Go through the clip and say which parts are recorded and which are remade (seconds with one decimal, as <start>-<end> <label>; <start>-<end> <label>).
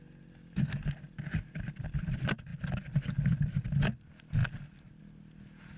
0.0-5.8 recorded